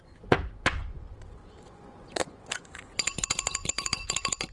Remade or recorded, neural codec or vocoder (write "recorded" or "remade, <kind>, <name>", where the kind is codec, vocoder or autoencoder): remade, vocoder, Vocos